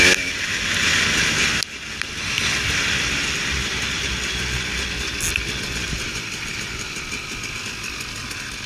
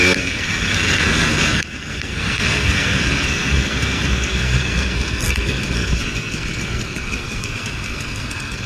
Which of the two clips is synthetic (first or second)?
second